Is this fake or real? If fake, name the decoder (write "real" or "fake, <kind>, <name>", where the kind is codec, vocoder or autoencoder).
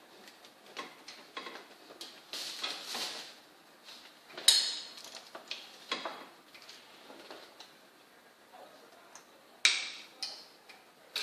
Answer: real